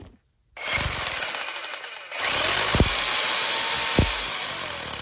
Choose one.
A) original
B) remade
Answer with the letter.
A